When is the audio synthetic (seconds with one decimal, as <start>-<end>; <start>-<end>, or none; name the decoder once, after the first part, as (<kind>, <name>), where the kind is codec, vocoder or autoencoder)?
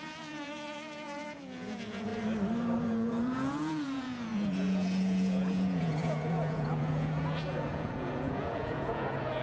0.0-2.1 (vocoder, Vocos); 2.8-9.4